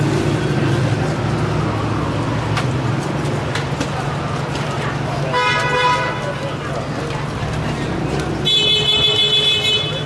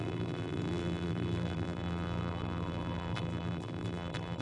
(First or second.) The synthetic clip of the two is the second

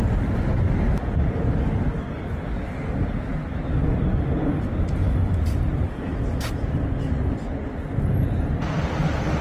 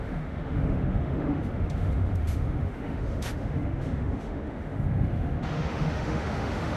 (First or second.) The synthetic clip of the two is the second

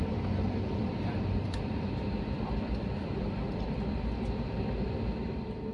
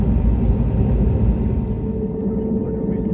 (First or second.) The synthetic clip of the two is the first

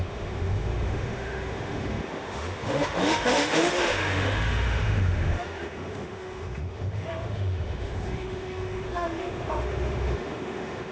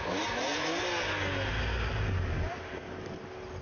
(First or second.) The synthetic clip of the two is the first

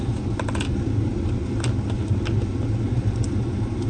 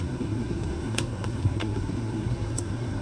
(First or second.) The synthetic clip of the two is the second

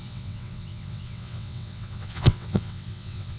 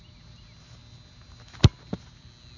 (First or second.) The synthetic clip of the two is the first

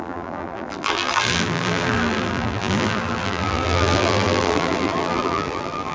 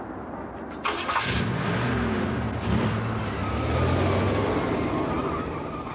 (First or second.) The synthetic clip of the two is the first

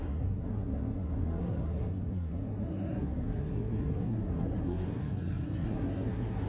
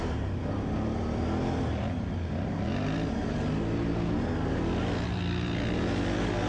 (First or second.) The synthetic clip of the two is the first